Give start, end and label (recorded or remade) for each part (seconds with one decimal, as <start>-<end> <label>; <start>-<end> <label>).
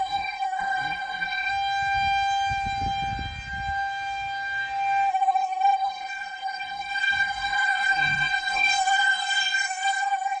0.0-1.5 remade; 1.5-5.1 recorded; 5.1-10.4 remade